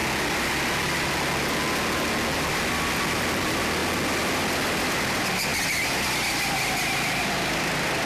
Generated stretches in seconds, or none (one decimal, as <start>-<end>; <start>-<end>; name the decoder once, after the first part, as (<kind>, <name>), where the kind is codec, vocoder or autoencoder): 2.7-8.1 (vocoder, BigVGAN v2)